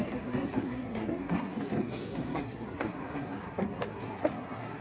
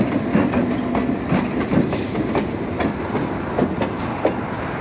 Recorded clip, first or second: second